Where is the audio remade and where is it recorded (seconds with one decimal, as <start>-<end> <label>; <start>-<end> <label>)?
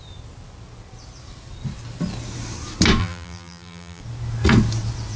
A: 0.0-3.0 recorded; 3.0-4.0 remade; 4.0-5.2 recorded